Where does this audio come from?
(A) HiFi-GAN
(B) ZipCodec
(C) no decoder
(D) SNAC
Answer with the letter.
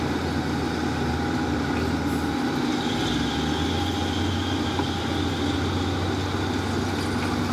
C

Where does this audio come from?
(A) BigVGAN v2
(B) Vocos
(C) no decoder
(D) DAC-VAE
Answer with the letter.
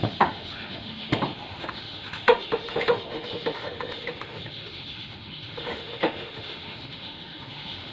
D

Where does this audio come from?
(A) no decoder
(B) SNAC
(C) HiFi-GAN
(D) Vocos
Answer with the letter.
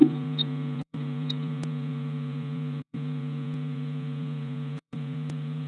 D